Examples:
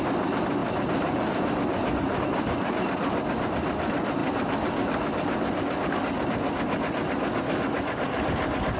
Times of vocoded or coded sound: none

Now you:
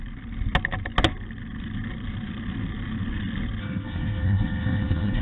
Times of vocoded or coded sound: 3.6-5.2 (codec, SNAC)

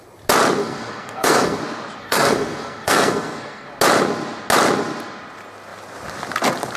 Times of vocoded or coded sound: 0.6-1.6 (codec, SNAC); 2.0-3.7